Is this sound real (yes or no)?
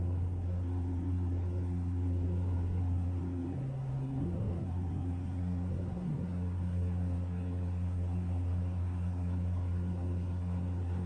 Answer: no